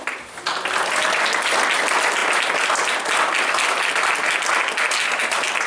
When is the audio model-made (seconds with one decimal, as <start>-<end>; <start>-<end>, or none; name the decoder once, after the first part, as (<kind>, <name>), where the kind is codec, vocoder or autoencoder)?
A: none